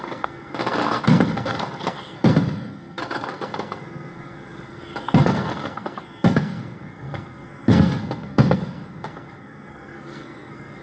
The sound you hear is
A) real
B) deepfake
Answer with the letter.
B